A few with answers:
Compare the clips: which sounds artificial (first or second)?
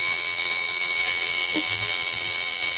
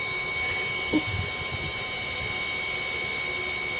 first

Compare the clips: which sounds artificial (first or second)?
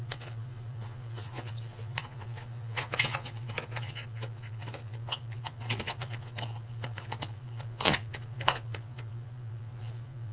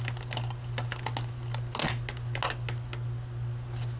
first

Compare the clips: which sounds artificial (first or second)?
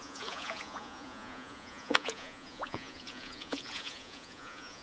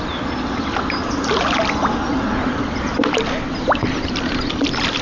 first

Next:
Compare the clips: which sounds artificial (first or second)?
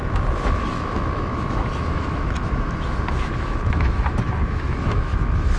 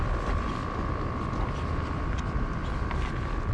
first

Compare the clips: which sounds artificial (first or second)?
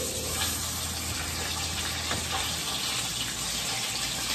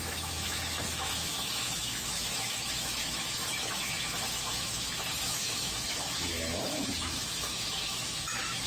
second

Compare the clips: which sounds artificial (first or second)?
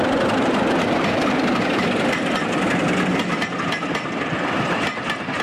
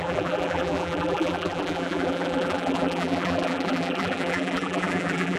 second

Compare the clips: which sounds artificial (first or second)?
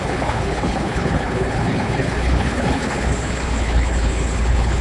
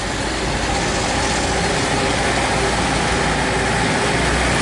first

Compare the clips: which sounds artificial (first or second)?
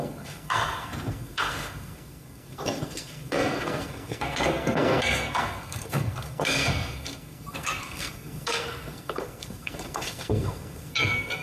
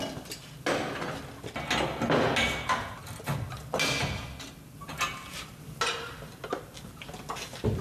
first